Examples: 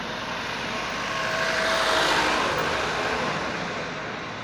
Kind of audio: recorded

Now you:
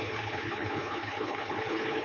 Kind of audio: remade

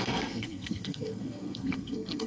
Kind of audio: remade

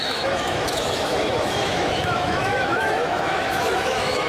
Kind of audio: remade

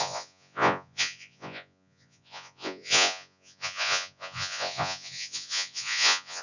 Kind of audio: remade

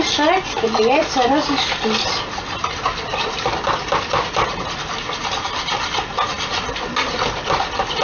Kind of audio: recorded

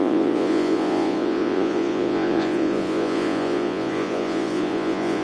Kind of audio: remade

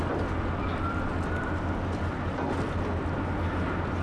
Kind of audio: recorded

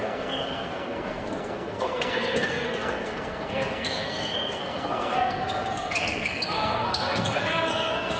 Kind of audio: remade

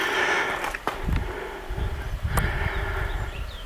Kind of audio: recorded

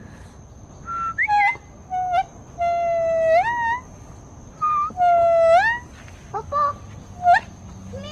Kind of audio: recorded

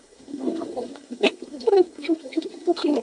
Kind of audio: remade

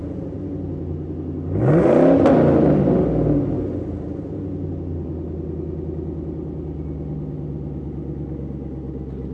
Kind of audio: recorded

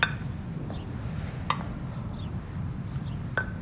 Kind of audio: recorded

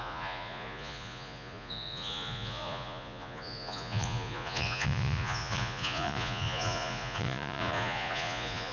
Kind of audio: remade